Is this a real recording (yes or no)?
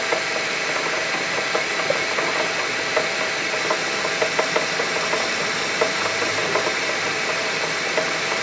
yes